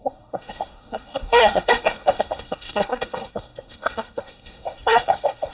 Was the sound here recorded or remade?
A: remade